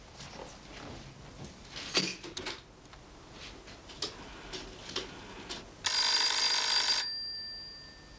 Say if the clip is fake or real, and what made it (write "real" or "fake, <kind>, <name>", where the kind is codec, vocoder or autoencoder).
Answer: real